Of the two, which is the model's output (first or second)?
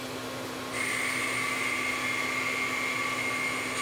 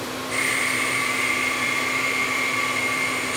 second